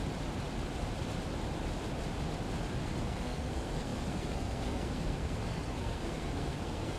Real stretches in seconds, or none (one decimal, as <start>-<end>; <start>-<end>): 0.0-2.7